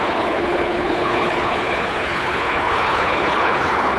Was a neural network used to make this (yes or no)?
yes